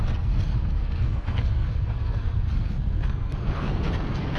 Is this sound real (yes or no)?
no